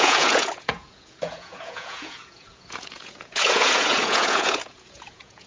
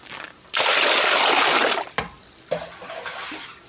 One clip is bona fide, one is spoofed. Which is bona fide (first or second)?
second